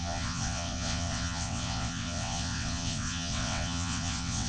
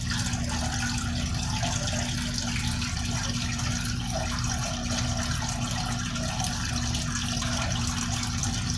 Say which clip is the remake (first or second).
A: first